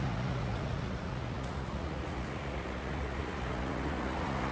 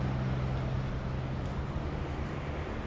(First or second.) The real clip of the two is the second